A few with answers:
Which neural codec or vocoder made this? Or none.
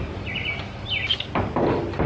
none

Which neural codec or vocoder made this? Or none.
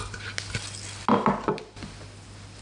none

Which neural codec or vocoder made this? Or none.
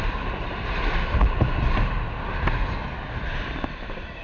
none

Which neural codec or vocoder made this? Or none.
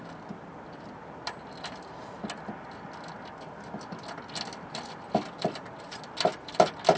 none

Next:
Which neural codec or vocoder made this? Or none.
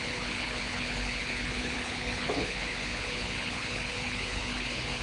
codec, HILCodec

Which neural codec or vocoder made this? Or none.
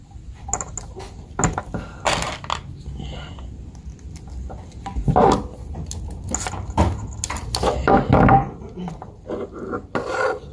none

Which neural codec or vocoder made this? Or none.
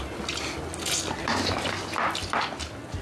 none